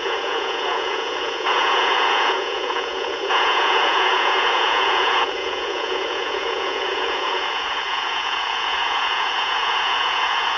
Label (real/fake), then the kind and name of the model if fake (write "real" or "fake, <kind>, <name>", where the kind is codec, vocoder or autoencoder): fake, vocoder, Vocos